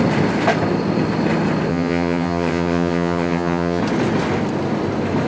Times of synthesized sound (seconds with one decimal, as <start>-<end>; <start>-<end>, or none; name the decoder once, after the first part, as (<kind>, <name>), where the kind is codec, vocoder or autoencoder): 1.7-3.8 (vocoder, HiFi-GAN)